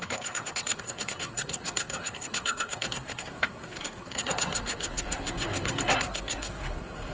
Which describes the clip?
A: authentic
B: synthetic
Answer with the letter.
B